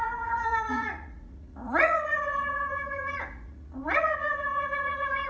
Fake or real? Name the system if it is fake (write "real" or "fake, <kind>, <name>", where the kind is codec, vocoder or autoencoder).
fake, vocoder, Vocos